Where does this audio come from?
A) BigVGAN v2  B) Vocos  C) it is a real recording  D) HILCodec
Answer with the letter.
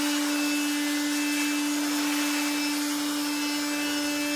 C